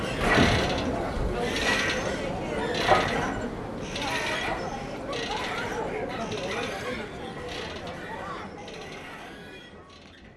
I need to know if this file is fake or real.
real